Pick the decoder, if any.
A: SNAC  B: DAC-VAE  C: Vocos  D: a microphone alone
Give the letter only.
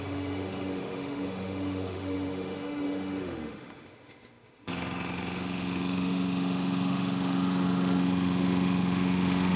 B